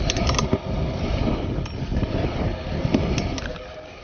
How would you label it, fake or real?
real